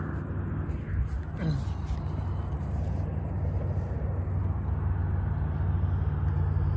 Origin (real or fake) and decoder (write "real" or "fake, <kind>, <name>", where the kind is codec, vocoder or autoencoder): real